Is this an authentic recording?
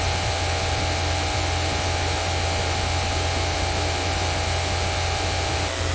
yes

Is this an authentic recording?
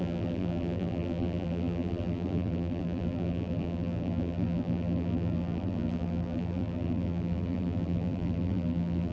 no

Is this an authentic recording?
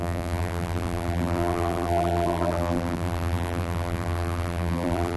no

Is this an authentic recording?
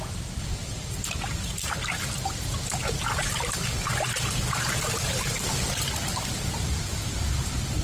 yes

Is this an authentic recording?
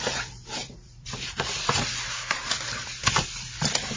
no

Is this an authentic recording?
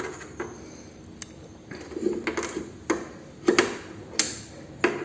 yes